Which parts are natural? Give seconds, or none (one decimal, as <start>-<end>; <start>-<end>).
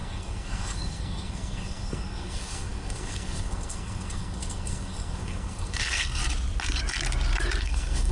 6.2-7.6